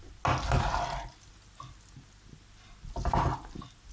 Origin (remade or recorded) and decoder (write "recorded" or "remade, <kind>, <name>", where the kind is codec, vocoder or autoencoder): recorded